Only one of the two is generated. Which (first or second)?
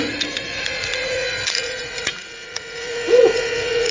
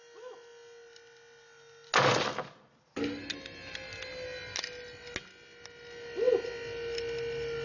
first